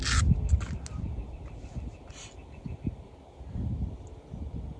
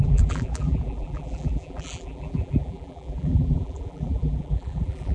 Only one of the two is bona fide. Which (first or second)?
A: first